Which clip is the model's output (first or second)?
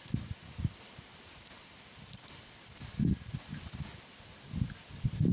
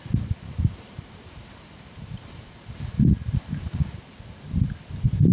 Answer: second